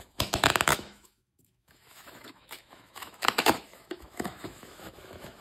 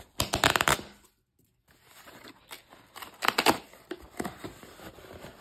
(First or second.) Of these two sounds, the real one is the second